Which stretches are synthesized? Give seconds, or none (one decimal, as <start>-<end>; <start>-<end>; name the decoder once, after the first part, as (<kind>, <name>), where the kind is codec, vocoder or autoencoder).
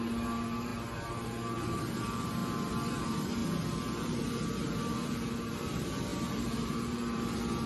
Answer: 0.0-2.4 (vocoder, BigVGAN v2); 3.0-3.4; 4.0-7.7